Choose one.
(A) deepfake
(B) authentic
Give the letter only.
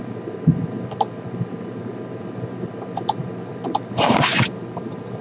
A